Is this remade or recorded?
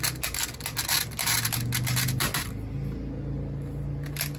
recorded